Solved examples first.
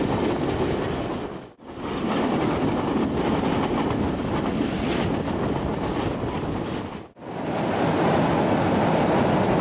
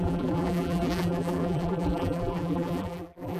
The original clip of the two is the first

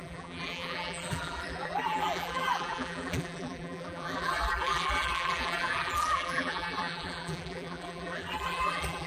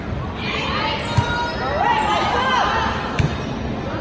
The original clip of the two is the second